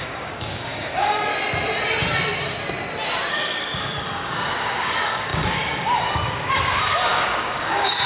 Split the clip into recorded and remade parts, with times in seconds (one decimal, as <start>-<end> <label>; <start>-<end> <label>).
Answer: 0.0-1.3 remade; 1.3-3.3 recorded; 3.3-8.1 remade